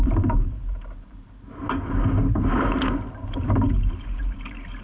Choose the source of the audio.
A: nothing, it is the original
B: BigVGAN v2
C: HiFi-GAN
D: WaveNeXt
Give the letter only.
B